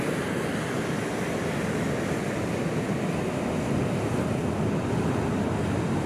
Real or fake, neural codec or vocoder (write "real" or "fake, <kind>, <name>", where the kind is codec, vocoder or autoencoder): real